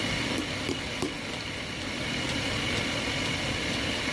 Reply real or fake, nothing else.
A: real